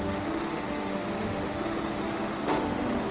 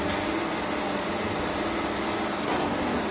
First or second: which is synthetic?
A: first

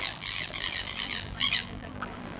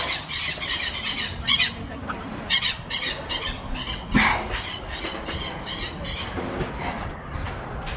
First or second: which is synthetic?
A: first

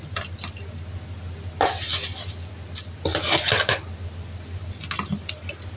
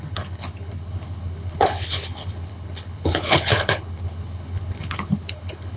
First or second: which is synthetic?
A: second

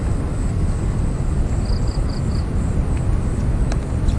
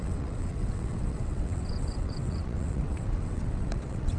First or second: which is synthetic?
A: second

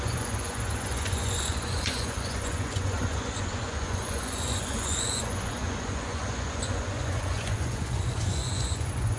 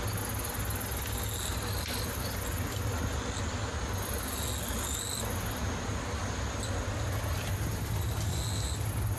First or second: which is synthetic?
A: first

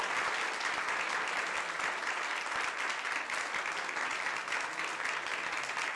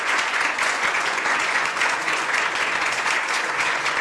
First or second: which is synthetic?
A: second